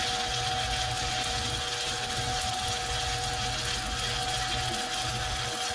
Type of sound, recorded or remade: recorded